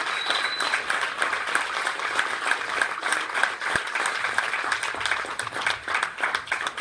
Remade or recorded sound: recorded